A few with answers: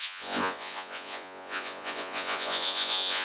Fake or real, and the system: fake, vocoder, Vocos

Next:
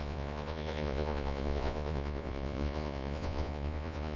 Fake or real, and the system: fake, vocoder, Vocos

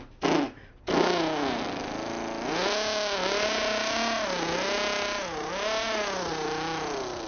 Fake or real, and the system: real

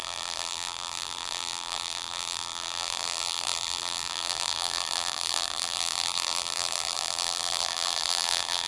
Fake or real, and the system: fake, vocoder, BigVGAN v2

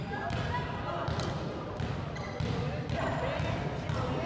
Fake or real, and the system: real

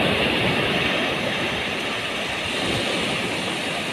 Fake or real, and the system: real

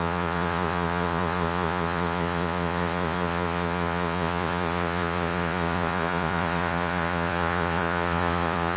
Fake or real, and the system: fake, vocoder, Vocos